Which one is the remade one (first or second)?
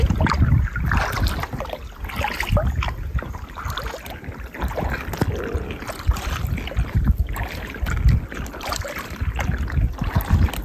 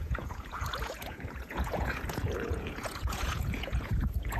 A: second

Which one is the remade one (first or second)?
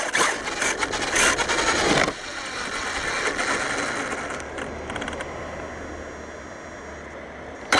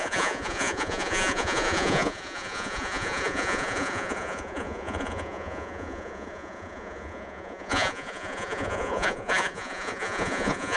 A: second